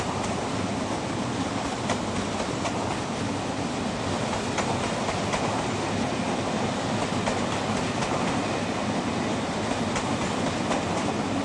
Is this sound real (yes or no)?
yes